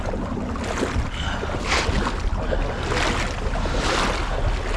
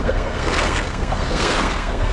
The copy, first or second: second